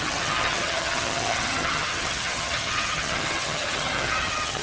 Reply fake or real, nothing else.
fake